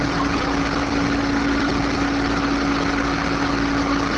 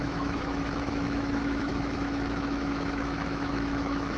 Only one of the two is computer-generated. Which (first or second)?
second